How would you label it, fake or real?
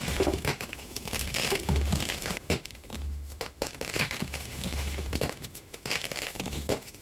fake